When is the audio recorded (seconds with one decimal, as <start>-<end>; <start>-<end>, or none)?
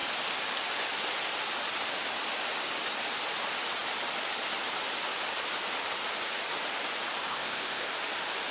0.0-7.3; 7.9-8.5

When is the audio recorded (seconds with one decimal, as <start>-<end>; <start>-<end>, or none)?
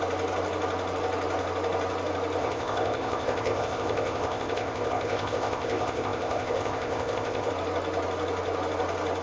0.0-2.4; 7.5-9.2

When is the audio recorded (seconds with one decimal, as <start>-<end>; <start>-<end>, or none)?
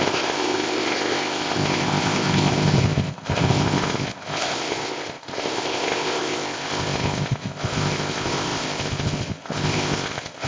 none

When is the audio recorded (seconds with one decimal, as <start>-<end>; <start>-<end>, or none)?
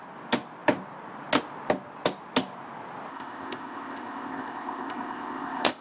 0.0-3.1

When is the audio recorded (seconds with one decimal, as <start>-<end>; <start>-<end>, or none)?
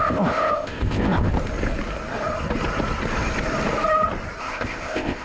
1.3-4.4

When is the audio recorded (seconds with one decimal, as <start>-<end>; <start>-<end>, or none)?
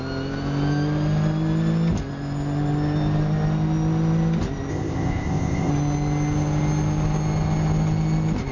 0.0-4.7; 5.7-8.5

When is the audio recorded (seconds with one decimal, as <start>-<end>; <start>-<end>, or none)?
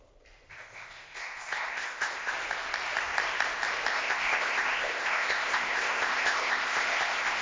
0.0-0.5; 2.3-3.9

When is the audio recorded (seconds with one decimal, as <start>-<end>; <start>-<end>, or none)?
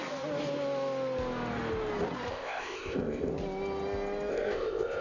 0.0-2.3; 3.3-4.3